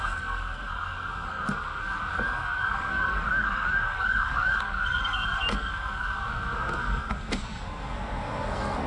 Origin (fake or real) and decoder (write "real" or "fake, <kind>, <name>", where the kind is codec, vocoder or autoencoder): fake, codec, SNAC